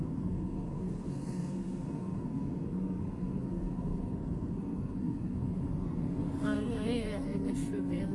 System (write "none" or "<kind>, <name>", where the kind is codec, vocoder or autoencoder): codec, SNAC